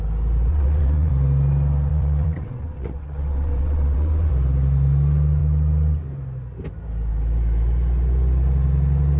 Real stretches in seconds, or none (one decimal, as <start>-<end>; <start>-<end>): 0.0-0.5; 1.1-1.9; 4.3-9.2